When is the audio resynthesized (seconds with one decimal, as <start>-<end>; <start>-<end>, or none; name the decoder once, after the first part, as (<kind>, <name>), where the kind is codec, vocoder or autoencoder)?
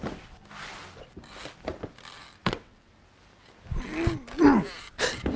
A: 2.4-2.9 (vocoder, WaveNeXt)